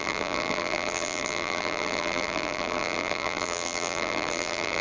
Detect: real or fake fake